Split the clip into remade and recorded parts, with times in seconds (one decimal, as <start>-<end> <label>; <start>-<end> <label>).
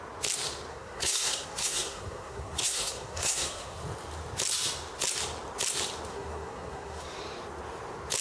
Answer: 0.0-0.7 recorded; 0.7-3.8 remade; 3.8-6.1 recorded; 6.1-7.2 remade; 7.2-8.2 recorded